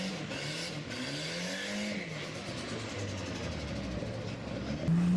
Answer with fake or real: real